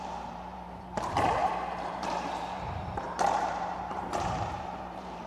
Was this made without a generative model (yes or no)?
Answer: no